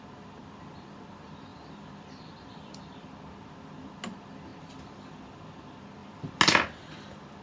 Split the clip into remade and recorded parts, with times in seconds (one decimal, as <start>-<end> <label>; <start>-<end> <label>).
0.0-1.5 recorded; 1.5-3.2 remade; 3.2-7.4 recorded